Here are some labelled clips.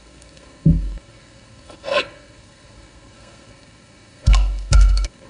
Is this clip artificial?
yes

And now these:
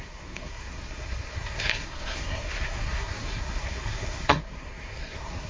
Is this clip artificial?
yes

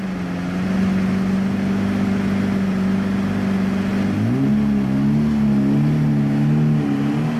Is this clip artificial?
no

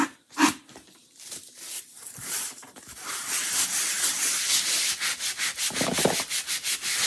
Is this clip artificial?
no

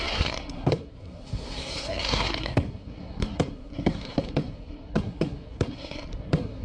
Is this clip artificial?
yes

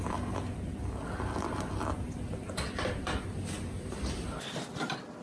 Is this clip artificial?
no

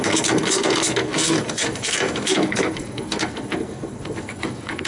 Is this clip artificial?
yes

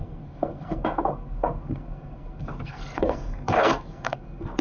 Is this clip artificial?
yes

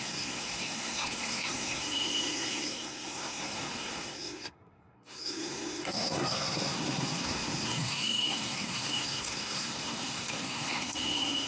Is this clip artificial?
yes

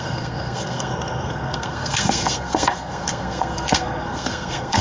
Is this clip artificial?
yes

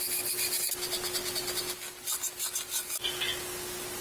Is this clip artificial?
no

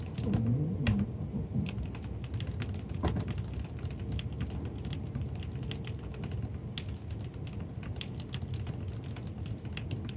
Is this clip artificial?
no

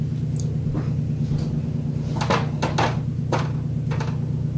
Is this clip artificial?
no